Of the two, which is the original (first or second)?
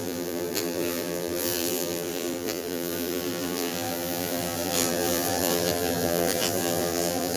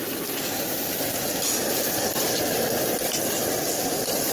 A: second